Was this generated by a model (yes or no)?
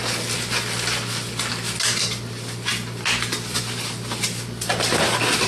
no